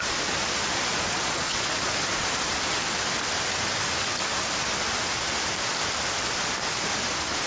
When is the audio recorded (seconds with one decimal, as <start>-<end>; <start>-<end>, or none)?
0.0-0.7; 2.3-7.5